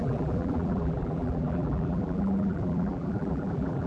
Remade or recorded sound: remade